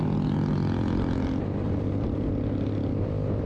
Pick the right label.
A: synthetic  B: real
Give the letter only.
B